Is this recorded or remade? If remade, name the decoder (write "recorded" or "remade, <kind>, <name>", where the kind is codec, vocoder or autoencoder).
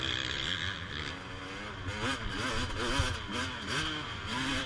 recorded